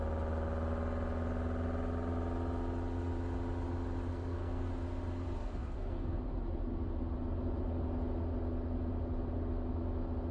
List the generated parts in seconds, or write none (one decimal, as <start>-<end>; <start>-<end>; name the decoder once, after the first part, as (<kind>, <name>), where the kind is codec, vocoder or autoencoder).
4.1-4.7 (codec, SNAC); 5.4-6.2